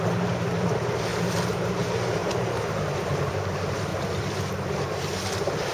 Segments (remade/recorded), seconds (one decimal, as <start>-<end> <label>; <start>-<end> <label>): 0.0-5.7 remade